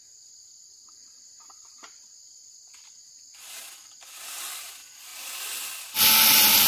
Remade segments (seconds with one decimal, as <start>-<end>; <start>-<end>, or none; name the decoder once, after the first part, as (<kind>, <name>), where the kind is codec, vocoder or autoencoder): none